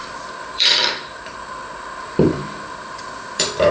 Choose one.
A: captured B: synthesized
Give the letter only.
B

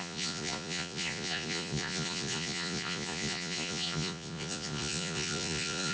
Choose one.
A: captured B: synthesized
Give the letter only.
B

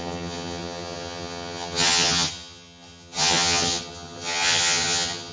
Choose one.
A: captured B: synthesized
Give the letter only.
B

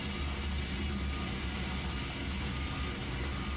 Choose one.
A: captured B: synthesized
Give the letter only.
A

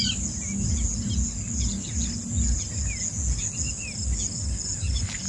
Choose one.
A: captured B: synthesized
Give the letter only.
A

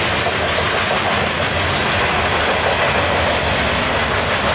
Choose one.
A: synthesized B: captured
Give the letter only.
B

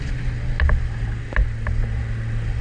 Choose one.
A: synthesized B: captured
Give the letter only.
B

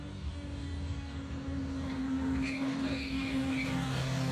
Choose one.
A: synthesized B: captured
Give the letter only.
A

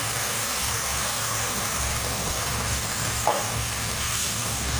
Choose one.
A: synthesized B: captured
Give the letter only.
A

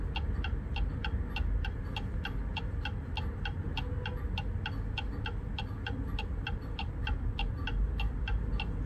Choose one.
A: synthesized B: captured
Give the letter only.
B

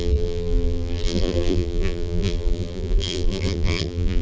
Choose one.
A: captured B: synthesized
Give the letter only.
B